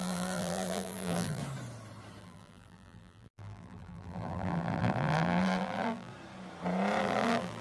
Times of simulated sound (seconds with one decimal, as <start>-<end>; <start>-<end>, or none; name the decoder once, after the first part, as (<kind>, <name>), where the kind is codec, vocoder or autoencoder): 0.0-1.4 (vocoder, BigVGAN v2); 2.2-6.1; 7.0-7.6